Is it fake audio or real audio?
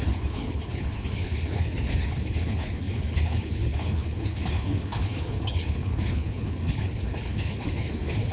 fake